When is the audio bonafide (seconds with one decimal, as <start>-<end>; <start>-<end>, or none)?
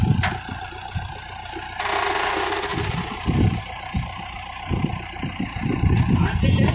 0.0-2.7; 3.6-6.7